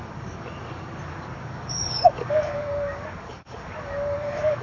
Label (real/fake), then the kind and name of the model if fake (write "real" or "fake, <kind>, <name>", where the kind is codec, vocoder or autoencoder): fake, codec, DAC